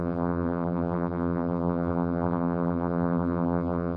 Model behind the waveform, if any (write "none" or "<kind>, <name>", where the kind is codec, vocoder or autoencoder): vocoder, BigVGAN v2